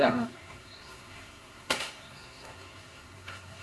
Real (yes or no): no